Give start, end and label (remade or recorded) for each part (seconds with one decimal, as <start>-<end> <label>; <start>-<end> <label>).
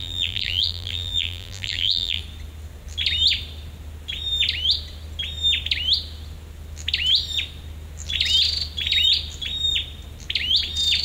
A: 0.0-2.2 remade; 2.2-11.0 recorded